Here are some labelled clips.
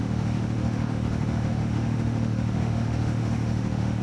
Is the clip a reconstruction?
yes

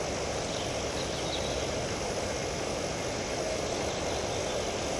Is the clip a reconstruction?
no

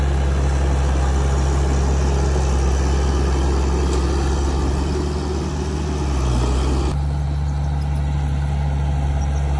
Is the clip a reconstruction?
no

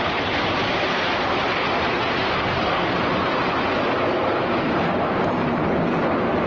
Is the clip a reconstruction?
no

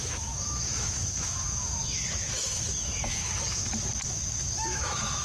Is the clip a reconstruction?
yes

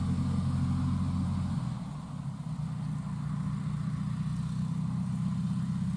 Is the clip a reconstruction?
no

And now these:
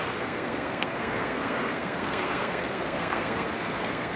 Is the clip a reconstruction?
yes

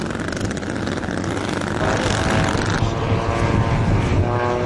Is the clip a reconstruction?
no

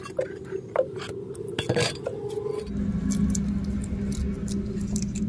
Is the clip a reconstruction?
no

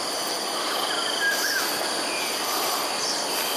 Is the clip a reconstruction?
no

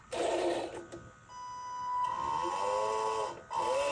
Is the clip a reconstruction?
no